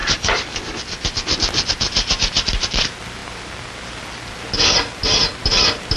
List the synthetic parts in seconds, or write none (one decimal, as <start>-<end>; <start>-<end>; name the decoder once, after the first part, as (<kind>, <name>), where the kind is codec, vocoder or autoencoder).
0.0-0.8 (codec, DAC)